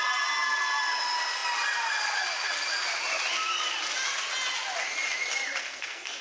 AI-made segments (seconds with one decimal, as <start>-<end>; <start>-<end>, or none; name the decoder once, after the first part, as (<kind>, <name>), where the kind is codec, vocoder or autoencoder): 5.6-6.2 (codec, SNAC)